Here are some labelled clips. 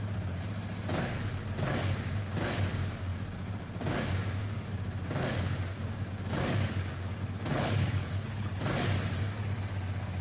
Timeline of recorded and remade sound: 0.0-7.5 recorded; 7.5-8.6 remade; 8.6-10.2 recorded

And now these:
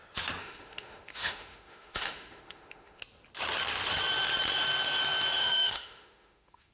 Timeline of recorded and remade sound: 0.0-0.4 recorded; 0.4-3.0 remade; 3.0-5.4 recorded; 5.4-6.7 remade

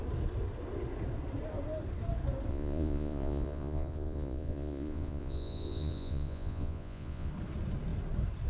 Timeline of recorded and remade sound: 0.0-2.5 recorded; 2.5-7.3 remade; 7.3-8.5 recorded